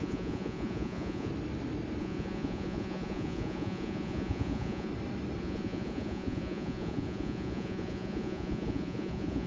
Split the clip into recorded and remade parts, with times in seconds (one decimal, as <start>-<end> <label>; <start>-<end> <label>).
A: 0.0-1.3 remade; 1.3-2.0 recorded; 2.0-4.9 remade; 4.9-5.4 recorded; 5.4-9.5 remade